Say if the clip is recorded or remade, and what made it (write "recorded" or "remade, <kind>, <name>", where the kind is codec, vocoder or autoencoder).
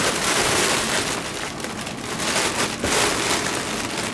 recorded